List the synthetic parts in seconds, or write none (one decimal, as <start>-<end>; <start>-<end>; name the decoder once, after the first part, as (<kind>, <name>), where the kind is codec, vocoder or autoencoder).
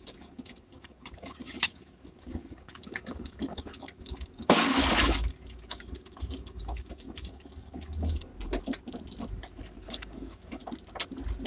0.0-8.3 (codec, DAC); 9.6-10.6